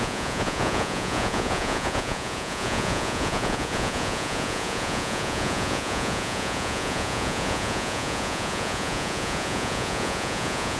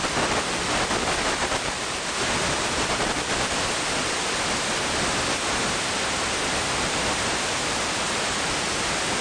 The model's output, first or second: first